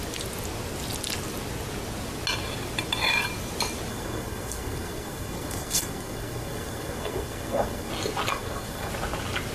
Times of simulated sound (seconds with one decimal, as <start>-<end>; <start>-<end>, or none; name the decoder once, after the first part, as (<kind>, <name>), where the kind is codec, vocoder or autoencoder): 3.9-7.9 (codec, SNAC); 8.3-8.9